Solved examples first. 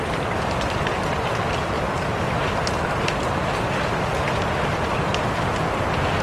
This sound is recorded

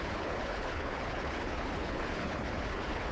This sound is remade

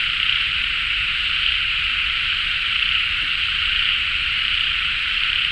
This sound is remade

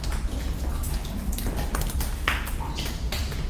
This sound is remade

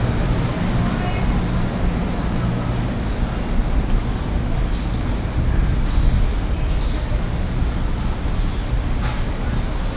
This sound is recorded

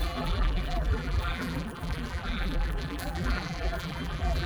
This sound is remade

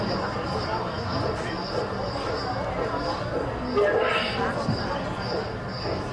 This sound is recorded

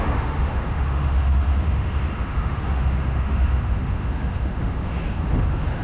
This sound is remade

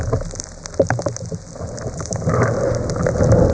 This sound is recorded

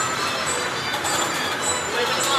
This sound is remade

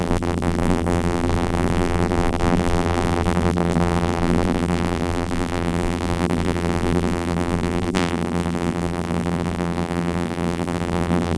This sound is remade